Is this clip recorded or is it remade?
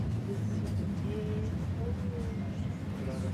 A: recorded